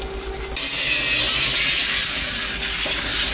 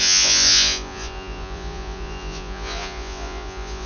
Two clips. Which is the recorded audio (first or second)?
first